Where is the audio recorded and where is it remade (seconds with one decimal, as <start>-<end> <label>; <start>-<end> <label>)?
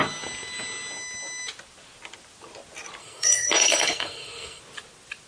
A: 0.0-3.0 recorded; 3.0-4.6 remade; 4.6-5.3 recorded